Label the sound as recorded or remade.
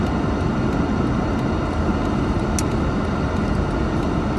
recorded